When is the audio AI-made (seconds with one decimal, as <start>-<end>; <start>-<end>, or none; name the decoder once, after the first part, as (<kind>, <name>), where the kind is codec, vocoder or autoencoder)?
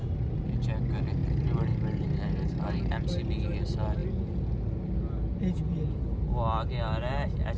1.2-2.8 (vocoder, BigVGAN v2)